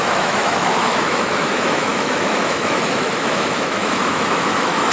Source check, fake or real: fake